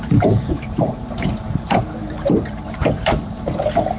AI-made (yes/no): yes